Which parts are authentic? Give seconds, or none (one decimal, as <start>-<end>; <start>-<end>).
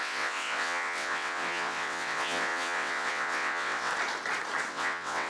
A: 3.9-4.7